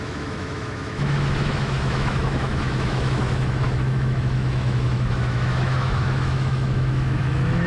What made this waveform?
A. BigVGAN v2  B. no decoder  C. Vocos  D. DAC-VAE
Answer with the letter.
D